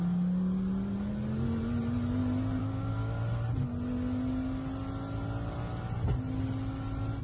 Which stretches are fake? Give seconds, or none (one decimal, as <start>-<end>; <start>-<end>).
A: 2.6-3.2